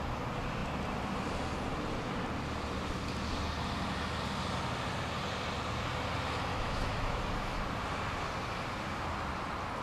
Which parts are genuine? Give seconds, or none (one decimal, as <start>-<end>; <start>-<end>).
0.0-6.5; 7.2-9.8